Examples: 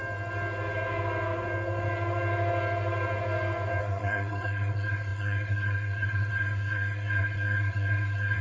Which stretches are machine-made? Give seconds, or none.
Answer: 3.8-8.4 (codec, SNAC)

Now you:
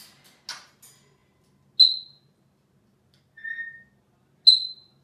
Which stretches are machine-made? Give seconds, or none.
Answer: none

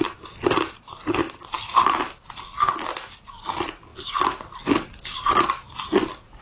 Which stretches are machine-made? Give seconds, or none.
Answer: none

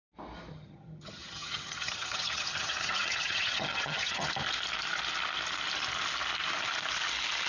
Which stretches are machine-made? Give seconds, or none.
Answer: 0.5-4.3 (vocoder, HiFi-GAN)

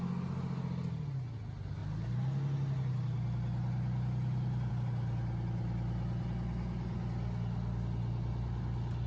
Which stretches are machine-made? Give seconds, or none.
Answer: none

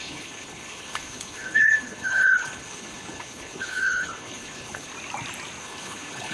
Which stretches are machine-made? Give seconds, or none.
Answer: 0.0-4.9 (codec, HILCodec); 5.6-6.3

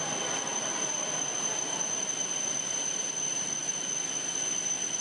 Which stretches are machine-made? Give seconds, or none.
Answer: none

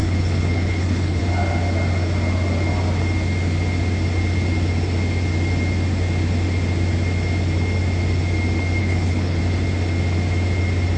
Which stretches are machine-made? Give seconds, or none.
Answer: 0.0-1.2 (codec, HILCodec); 8.8-9.4